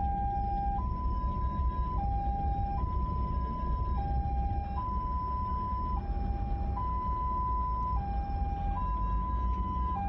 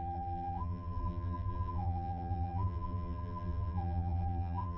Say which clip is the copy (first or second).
second